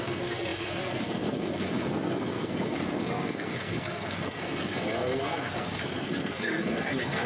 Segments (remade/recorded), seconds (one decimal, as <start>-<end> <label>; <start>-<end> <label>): 0.0-7.3 remade